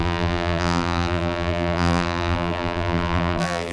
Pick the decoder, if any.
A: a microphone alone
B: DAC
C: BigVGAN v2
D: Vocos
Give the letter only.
C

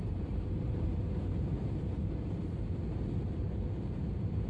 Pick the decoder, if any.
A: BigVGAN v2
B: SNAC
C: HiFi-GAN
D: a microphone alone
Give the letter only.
A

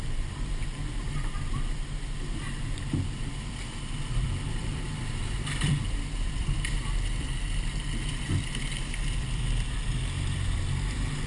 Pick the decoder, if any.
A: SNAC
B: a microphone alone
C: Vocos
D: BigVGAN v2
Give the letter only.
D